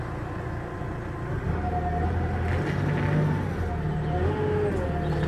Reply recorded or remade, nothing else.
recorded